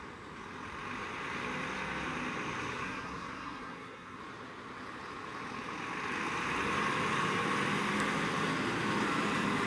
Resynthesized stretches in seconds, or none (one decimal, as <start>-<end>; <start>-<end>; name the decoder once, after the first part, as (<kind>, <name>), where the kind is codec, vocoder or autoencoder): 2.7-4.2 (codec, SNAC)

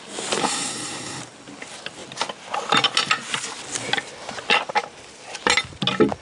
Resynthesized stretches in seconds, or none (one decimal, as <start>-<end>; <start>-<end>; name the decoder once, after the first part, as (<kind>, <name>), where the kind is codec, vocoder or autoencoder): 0.4-1.2 (codec, SNAC)

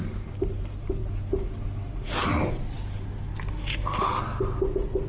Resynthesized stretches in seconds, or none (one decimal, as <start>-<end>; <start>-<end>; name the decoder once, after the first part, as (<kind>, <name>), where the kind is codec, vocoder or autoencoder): none

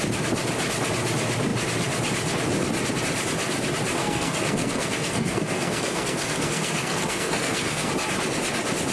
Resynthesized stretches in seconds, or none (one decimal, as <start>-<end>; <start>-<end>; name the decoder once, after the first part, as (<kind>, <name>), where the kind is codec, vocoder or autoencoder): 4.0-7.9 (codec, SNAC)